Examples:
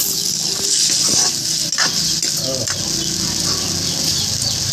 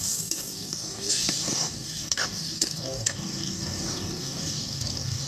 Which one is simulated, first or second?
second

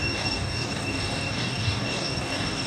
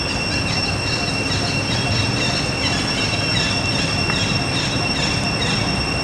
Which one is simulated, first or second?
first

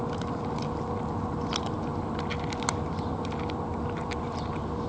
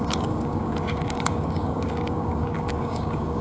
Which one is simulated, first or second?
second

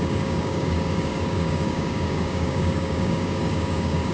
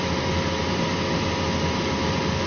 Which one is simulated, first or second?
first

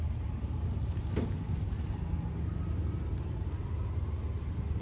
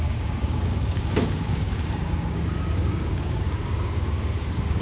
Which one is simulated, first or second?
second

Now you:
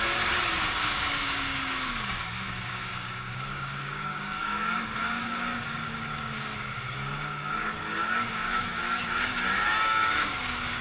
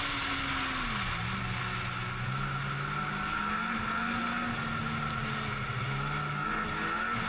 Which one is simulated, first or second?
first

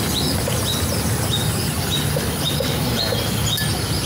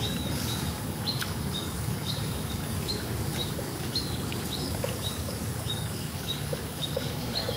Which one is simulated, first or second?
second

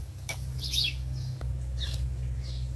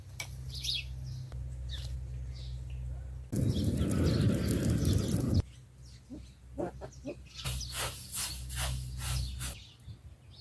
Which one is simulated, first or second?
first